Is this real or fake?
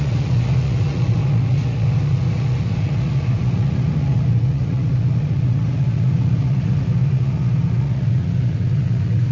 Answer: fake